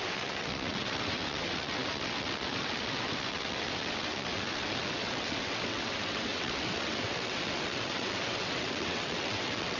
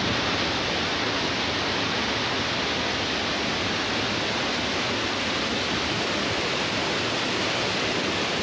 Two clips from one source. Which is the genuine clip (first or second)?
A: second